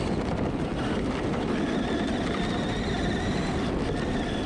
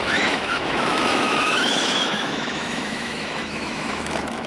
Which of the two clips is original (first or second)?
first